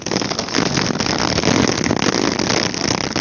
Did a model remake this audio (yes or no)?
no